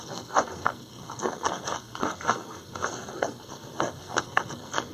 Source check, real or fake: fake